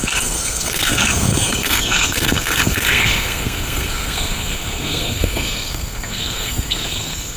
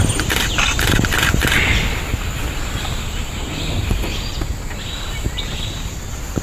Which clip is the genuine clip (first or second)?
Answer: second